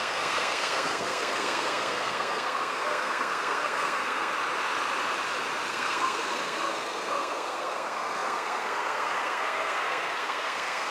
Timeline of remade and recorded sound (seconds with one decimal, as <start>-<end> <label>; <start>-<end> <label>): 0.0-4.3 remade; 4.3-5.7 recorded; 5.7-10.9 remade